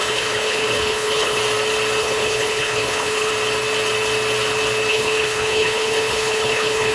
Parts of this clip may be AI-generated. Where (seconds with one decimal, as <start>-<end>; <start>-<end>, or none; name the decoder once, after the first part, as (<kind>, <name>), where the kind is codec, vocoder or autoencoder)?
0.0-1.4 (codec, HILCodec); 2.0-3.3; 4.9-6.9